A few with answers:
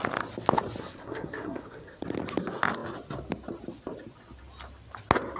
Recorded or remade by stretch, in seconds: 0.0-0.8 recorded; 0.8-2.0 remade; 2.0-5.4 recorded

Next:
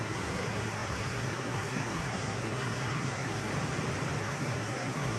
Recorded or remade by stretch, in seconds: 0.0-3.5 remade; 3.5-4.2 recorded; 4.2-5.2 remade